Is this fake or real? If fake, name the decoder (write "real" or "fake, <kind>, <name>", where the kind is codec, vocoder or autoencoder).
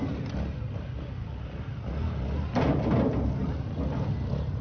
real